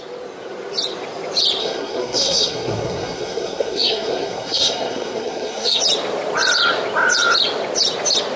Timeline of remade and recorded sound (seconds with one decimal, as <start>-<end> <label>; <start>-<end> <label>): 0.0-1.6 recorded; 1.6-5.8 remade; 5.8-8.4 recorded

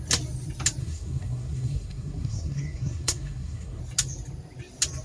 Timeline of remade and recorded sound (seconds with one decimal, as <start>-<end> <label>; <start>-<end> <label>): 0.0-0.8 recorded; 0.8-3.8 remade; 3.8-5.0 recorded

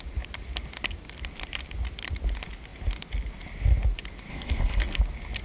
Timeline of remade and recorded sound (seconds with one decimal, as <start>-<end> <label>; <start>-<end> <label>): 0.0-4.3 recorded; 4.3-5.0 remade; 5.0-5.4 recorded

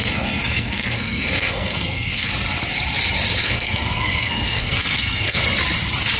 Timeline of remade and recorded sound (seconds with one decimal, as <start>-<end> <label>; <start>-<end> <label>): 0.0-2.3 remade; 2.3-3.4 recorded; 3.4-5.4 remade; 5.4-6.2 recorded

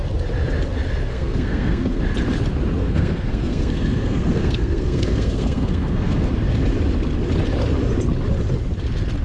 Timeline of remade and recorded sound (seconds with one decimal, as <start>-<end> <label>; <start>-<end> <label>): 0.0-1.1 recorded; 1.1-2.0 remade; 2.0-2.8 recorded; 2.8-6.3 remade; 6.3-9.2 recorded

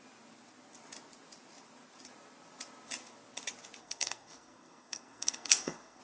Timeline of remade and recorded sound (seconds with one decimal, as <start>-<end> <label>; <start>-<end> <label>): 0.0-3.8 recorded; 3.8-6.0 remade

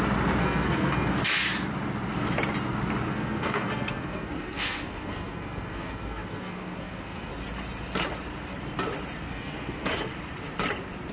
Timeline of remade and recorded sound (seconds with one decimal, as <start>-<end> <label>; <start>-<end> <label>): 0.0-0.4 recorded; 0.4-1.1 remade; 1.1-3.1 recorded; 3.1-7.3 remade; 7.3-9.2 recorded; 9.2-9.9 remade; 9.9-11.1 recorded

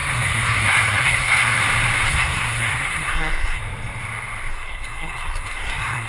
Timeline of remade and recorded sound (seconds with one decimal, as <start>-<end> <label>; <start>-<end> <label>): 0.0-1.6 remade; 1.6-2.1 recorded; 2.1-3.6 remade; 3.6-4.5 recorded; 4.5-6.1 remade